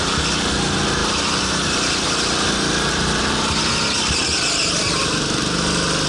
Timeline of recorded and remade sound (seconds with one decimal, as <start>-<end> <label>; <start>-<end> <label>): 0.0-6.1 recorded